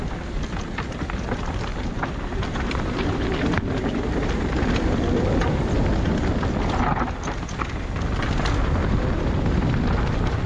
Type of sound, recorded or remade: recorded